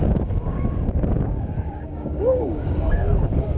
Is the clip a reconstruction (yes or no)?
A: yes